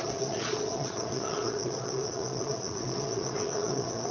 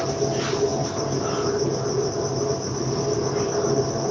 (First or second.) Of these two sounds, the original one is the second